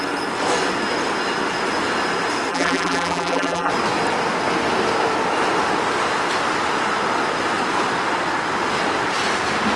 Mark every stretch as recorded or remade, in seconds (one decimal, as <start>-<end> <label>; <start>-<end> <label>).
0.0-2.5 recorded; 2.5-3.7 remade; 3.7-9.8 recorded